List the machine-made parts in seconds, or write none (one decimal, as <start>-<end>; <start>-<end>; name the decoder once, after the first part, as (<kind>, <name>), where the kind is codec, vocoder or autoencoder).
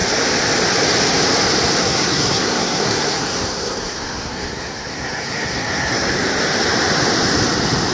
1.8-6.1 (codec, SNAC)